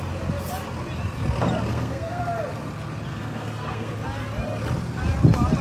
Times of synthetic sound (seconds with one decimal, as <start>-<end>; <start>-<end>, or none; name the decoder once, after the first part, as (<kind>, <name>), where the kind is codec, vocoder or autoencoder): 1.7-2.2 (codec, SNAC); 3.1-3.9